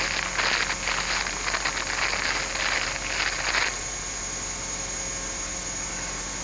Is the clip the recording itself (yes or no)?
yes